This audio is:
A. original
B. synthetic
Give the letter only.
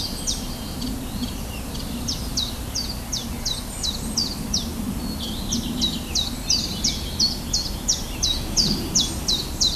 A